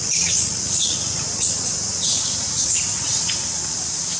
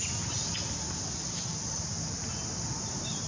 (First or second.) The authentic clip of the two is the second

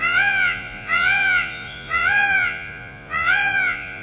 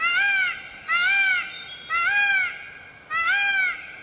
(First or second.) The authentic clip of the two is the second